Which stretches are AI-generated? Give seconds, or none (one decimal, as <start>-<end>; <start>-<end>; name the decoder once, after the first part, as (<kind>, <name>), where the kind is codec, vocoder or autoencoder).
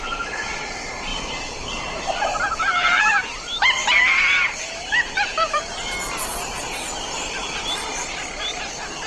0.0-5.7 (vocoder, BigVGAN v2); 6.6-7.4; 8.7-9.1